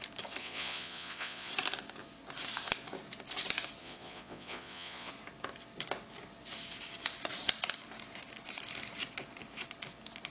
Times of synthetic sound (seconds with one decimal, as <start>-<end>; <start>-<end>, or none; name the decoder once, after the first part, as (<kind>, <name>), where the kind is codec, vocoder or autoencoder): 0.4-1.5 (vocoder, Vocos); 3.8-5.1